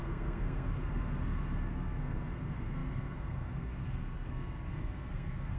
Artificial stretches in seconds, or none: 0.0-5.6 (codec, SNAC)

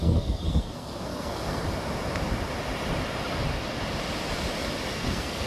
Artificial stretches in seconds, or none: 0.0-1.6 (codec, SNAC); 4.9-5.5

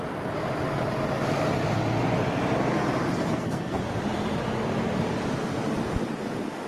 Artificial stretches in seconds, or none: 3.3-3.8 (codec, SNAC)

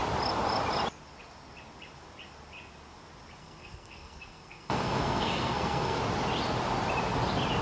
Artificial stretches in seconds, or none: 3.4-6.0 (codec, SNAC)